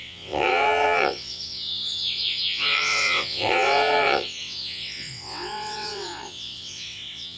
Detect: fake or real fake